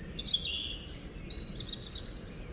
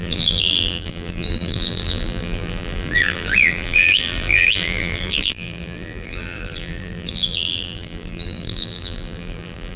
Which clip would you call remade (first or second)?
second